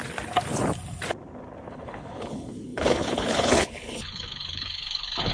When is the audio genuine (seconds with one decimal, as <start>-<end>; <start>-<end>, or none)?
0.0-1.7